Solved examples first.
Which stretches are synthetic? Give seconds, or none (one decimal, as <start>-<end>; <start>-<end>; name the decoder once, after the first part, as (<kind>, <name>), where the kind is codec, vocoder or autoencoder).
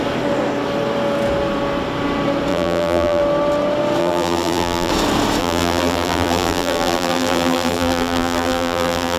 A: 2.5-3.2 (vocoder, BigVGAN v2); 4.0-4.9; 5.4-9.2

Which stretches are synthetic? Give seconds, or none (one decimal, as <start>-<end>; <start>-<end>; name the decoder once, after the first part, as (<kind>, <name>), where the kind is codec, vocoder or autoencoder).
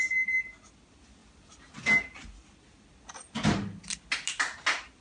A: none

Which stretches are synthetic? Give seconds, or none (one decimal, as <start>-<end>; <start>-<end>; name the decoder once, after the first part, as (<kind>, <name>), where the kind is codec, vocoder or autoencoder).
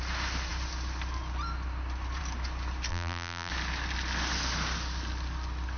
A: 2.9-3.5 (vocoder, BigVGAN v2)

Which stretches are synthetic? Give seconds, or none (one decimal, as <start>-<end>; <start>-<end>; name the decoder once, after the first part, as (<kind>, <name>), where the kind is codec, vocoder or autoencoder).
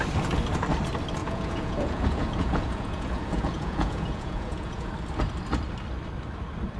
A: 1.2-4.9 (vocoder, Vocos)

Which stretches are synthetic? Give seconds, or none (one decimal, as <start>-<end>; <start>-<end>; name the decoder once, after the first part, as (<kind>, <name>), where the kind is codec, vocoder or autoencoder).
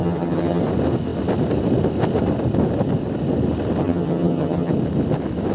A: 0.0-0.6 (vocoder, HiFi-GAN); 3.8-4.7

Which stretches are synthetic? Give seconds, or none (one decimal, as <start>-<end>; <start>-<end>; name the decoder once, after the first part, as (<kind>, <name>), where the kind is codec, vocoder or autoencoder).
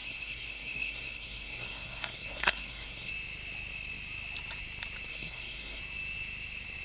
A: 0.0-3.1 (codec, SNAC); 5.1-5.8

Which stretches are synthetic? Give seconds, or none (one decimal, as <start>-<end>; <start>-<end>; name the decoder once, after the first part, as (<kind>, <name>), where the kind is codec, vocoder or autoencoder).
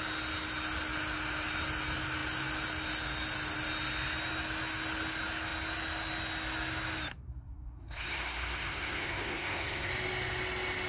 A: 7.3-9.9 (codec, SNAC)